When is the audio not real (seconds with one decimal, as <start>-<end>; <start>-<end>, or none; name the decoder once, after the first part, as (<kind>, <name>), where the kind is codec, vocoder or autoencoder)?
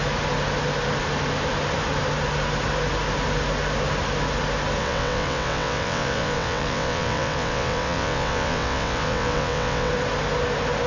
4.8-9.9 (vocoder, WaveNeXt)